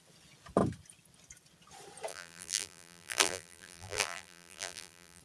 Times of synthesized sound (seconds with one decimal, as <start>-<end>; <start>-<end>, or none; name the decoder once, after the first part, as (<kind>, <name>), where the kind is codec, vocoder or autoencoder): 2.1-5.2 (vocoder, BigVGAN v2)